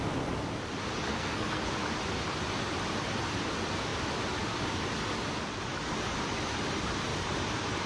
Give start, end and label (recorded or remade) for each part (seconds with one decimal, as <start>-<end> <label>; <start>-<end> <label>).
0.0-1.1 recorded; 1.1-1.7 remade; 1.7-7.9 recorded